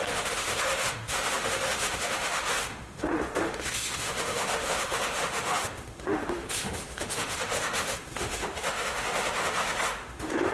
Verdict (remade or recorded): remade